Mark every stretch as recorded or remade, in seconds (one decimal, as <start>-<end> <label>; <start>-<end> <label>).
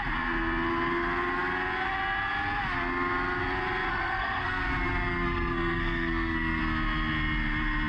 0.0-3.9 recorded; 3.9-4.6 remade; 4.6-5.1 recorded; 5.1-6.6 remade; 6.6-7.9 recorded